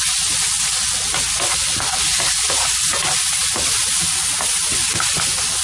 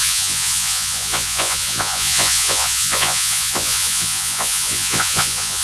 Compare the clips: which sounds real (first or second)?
first